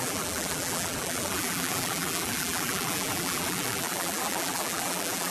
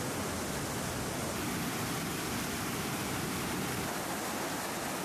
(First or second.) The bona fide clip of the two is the second